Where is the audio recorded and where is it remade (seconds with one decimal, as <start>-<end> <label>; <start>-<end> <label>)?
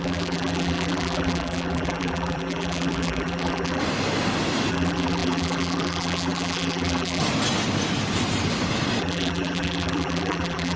0.0-3.8 remade; 3.8-4.7 recorded; 4.7-7.2 remade; 7.2-9.0 recorded; 9.0-10.8 remade